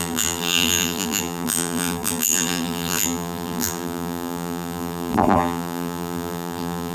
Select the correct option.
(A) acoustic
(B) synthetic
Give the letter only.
B